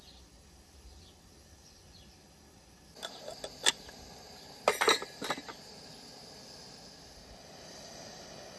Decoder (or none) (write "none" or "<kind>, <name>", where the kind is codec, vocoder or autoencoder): none